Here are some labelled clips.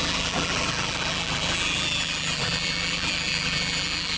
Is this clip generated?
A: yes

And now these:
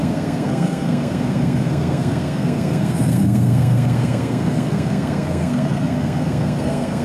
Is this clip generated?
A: yes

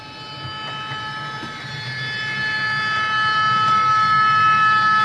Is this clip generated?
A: no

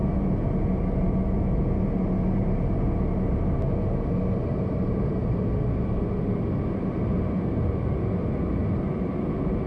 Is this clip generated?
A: no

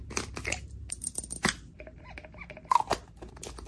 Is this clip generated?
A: no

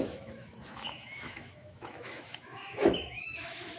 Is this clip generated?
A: yes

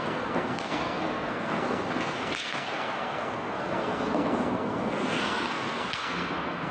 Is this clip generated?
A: yes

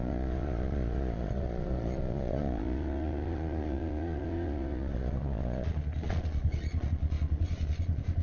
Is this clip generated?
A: yes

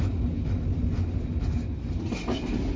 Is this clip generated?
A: no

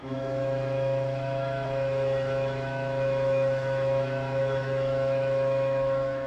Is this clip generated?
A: yes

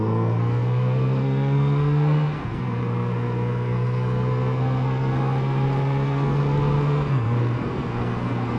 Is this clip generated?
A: yes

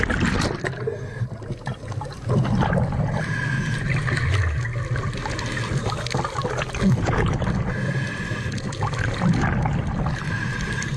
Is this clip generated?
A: no